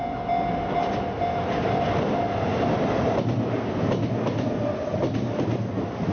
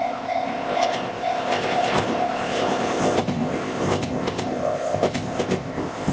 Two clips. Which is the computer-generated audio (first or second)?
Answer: second